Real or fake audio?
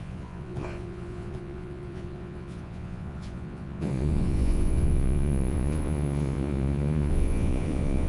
fake